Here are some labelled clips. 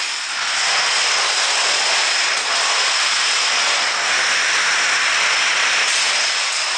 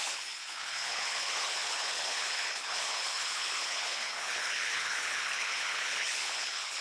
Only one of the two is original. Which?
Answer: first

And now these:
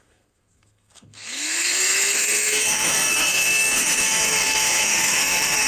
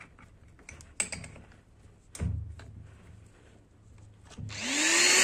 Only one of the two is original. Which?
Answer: second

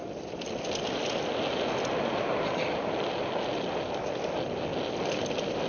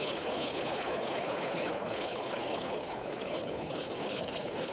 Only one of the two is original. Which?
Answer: first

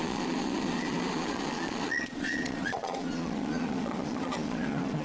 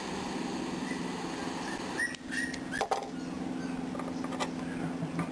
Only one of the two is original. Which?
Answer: second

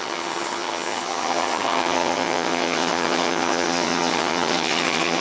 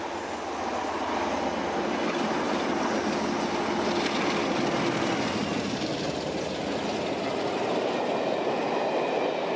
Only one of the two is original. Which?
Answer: second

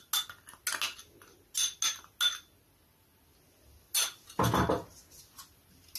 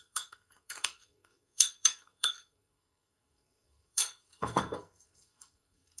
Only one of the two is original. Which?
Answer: first